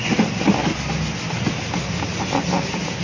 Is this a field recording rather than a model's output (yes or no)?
yes